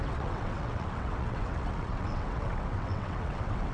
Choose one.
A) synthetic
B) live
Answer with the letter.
A